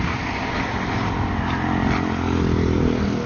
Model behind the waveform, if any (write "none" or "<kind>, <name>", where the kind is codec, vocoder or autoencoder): none